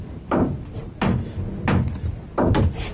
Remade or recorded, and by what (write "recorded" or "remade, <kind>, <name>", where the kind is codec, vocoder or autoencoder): recorded